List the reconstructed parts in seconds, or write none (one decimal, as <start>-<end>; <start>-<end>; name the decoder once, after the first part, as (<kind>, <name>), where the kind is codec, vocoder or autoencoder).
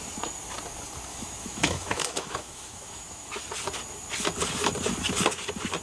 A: 1.1-3.3 (autoencoder, DAC-VAE)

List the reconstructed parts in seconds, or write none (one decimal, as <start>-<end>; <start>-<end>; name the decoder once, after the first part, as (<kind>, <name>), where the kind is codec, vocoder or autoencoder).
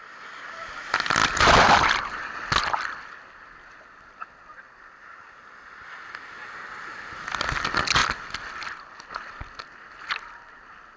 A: none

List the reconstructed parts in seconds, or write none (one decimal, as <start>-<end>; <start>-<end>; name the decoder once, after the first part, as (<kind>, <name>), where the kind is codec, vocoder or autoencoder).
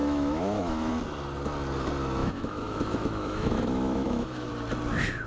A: 0.0-0.9 (autoencoder, DAC-VAE); 2.2-4.5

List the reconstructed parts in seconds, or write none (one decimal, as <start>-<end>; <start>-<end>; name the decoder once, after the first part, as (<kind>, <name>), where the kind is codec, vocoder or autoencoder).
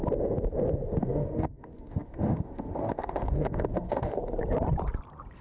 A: 1.0-4.2 (autoencoder, DAC-VAE)